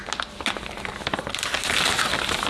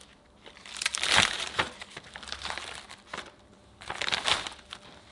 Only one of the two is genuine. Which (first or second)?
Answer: first